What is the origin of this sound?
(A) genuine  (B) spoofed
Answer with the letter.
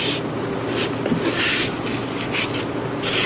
A